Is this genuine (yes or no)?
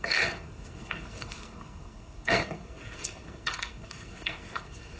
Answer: no